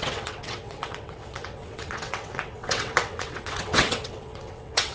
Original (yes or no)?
no